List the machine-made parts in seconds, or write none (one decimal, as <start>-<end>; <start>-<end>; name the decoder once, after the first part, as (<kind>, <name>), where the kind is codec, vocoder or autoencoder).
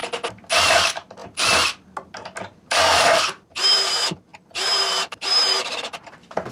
0.6-1.2 (vocoder, BigVGAN v2); 2.4-6.5